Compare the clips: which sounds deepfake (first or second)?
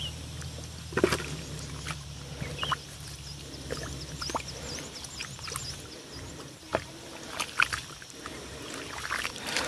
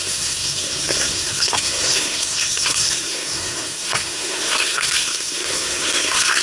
second